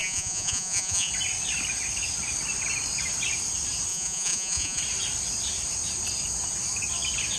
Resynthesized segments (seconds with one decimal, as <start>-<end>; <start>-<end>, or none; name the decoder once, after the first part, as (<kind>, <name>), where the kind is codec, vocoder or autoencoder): 0.0-1.1 (vocoder, Vocos); 3.9-4.8